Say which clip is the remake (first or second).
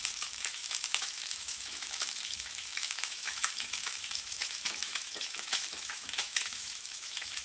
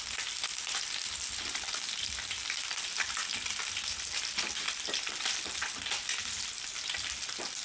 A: first